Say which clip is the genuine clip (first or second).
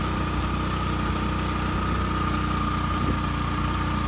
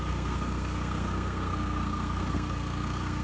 first